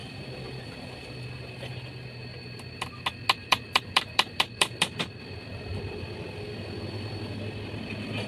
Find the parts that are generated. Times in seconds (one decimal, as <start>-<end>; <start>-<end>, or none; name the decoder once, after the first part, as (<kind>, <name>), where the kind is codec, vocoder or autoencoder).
0.0-0.8 (vocoder, BigVGAN v2); 3.4-7.4